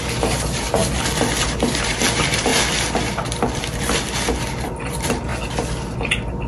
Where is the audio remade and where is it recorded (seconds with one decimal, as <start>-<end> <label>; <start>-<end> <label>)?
0.0-0.8 remade; 0.8-1.4 recorded; 1.4-2.5 remade; 2.5-4.4 recorded; 4.4-5.3 remade; 5.3-6.5 recorded